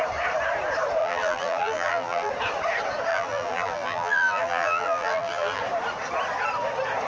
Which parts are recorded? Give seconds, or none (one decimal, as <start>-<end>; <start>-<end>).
0.0-1.0; 2.3-3.1; 5.6-7.1